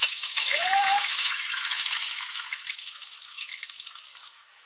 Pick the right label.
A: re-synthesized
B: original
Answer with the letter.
A